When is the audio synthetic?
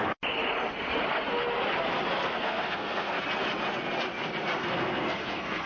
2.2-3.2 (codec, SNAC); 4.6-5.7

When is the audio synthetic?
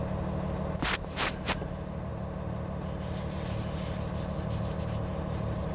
none